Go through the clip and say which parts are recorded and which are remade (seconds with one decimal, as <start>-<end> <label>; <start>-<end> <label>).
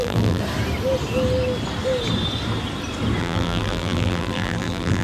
0.0-0.4 remade; 0.4-3.2 recorded; 3.2-5.0 remade